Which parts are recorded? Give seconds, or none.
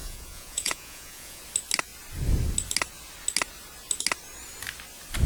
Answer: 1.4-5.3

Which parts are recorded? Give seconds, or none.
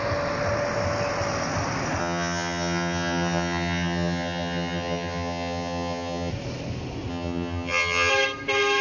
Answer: 0.0-2.0; 6.3-7.1; 8.1-8.8